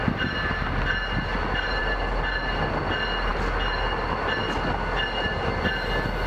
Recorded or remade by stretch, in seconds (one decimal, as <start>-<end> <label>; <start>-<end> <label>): 0.0-6.3 recorded